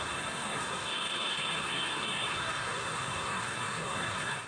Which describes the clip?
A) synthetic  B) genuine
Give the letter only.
A